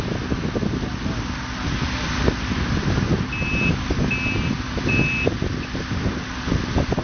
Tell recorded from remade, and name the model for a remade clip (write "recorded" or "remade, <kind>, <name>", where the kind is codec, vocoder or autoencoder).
recorded